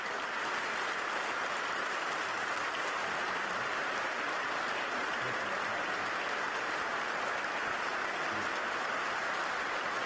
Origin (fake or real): fake